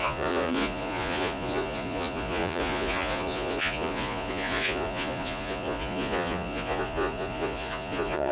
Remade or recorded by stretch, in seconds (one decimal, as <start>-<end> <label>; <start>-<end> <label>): 0.0-8.3 remade

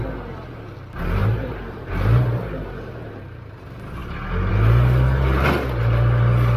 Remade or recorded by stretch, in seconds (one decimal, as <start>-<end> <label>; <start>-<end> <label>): 0.0-1.2 recorded; 1.2-2.9 remade; 2.9-6.6 recorded

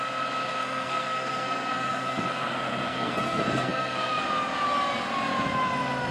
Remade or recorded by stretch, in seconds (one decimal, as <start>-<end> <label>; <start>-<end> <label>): 0.0-0.5 recorded; 0.5-4.2 remade; 4.2-6.1 recorded